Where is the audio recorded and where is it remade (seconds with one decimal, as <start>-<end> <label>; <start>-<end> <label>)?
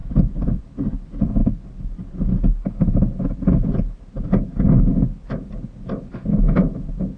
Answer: 0.0-7.2 recorded